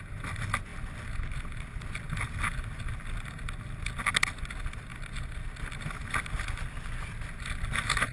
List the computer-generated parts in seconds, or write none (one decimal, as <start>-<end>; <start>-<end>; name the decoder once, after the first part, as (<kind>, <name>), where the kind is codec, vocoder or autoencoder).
none